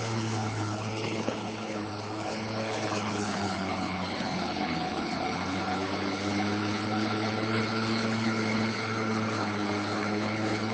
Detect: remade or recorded remade